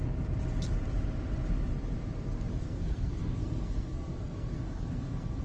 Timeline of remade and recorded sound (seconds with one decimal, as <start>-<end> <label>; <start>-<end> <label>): 0.0-2.6 recorded; 2.6-5.4 remade